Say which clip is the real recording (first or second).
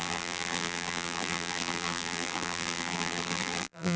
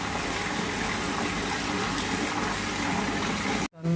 second